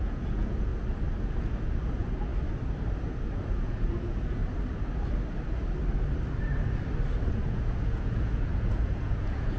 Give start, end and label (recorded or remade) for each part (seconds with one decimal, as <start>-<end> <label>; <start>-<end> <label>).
0.0-0.7 remade; 0.7-1.2 recorded; 1.2-2.3 remade; 2.3-3.2 recorded; 3.2-4.4 remade; 4.4-7.3 recorded; 7.3-9.6 remade